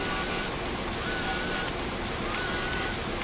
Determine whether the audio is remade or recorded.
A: recorded